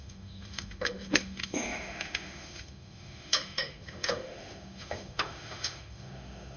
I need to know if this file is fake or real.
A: fake